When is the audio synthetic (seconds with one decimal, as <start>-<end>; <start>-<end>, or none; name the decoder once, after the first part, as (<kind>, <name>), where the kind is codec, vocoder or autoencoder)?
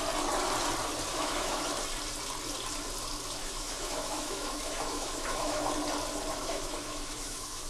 1.1-1.6 (autoencoder, DAC-VAE); 3.4-5.7; 6.3-7.7